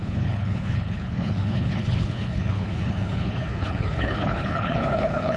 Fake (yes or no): yes